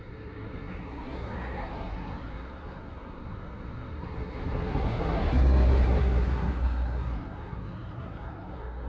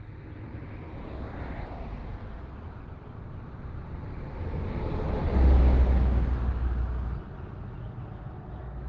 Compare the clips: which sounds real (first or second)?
second